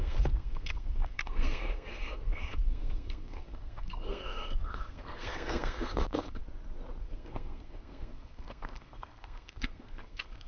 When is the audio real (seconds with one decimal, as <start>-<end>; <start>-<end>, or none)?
6.4-7.0